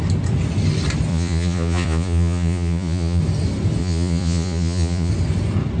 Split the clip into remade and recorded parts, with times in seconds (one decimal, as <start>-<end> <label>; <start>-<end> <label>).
0.0-1.1 recorded; 1.1-3.2 remade; 3.2-3.8 recorded; 3.8-5.1 remade; 5.1-5.8 recorded